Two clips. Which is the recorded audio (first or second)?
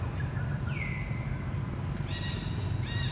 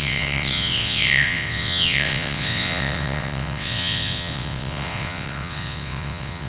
first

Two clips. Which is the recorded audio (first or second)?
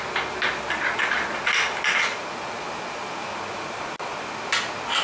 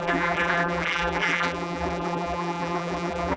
first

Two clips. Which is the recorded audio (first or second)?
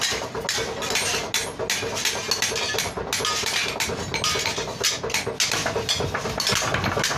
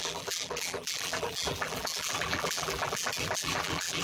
first